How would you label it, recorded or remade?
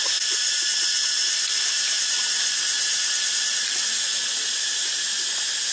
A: recorded